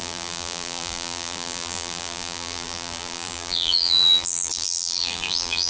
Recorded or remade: remade